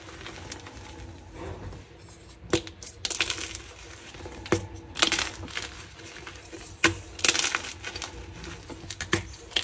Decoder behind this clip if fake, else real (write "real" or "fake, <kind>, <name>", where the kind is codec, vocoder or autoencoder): real